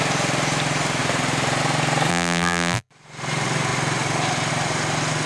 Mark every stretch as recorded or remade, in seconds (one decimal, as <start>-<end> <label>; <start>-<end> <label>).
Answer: 0.0-2.1 recorded; 2.1-2.9 remade; 2.9-5.3 recorded